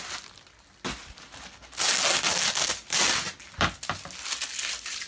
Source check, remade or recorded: recorded